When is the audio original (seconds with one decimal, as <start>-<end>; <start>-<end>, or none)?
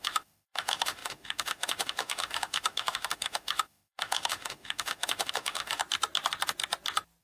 5.8-7.2